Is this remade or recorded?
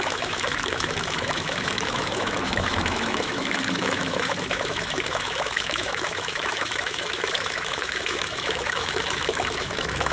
remade